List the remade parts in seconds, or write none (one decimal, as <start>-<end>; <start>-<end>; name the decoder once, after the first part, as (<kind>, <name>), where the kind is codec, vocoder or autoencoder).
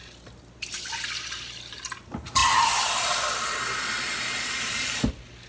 none